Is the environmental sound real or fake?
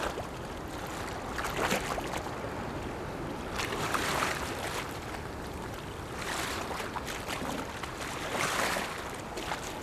real